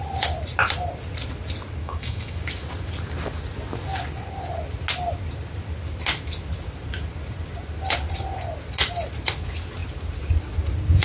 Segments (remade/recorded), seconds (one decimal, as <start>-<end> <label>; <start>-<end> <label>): 0.0-1.8 recorded; 1.8-2.4 remade; 2.4-11.0 recorded